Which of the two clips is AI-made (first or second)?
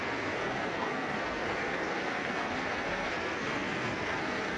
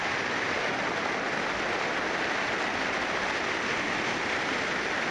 first